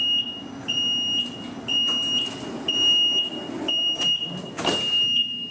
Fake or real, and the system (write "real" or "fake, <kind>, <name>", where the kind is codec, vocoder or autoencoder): real